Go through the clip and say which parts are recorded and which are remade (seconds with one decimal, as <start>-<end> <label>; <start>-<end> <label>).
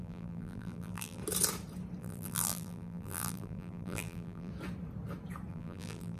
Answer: 0.0-1.2 remade; 1.2-2.0 recorded; 2.0-4.5 remade; 4.5-5.5 recorded; 5.5-6.2 remade